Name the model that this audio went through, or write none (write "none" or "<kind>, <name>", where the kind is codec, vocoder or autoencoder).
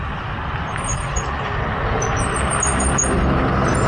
none